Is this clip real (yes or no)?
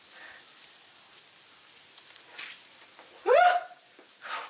yes